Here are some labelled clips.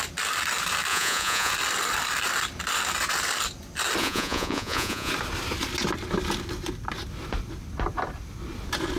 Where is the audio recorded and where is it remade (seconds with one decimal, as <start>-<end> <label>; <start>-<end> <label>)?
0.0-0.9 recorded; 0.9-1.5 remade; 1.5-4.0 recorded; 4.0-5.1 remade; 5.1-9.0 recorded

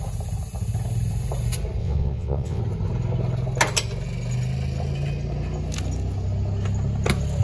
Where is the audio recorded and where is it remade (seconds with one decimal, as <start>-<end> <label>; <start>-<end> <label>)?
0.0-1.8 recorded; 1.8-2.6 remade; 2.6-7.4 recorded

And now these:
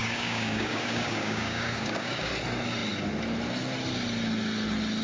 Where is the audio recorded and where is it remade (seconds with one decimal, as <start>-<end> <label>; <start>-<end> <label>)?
0.0-2.3 remade; 2.3-5.0 recorded